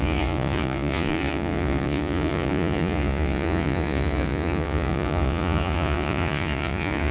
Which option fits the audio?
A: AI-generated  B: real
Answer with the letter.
A